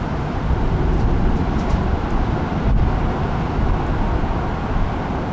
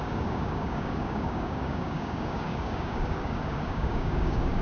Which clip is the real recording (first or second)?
first